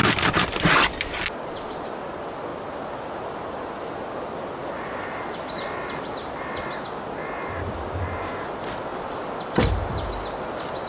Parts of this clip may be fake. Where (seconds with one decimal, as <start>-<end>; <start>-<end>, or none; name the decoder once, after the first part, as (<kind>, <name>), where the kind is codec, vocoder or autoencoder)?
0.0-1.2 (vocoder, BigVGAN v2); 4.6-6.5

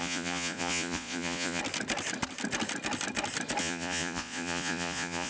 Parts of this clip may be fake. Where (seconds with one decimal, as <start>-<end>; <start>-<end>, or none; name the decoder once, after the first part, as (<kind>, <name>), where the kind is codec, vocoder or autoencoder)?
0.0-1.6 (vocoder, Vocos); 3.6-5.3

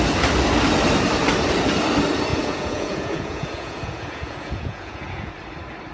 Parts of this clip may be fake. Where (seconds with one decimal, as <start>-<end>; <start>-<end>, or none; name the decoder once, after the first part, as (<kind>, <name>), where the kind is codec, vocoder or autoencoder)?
2.3-5.3 (vocoder, Vocos)

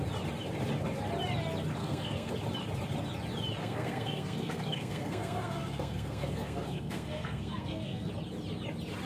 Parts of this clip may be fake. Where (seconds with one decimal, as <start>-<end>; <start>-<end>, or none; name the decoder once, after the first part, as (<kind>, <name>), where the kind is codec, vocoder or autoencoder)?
1.8-2.3 (codec, SNAC); 3.6-8.1